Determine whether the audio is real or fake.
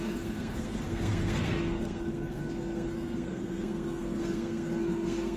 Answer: fake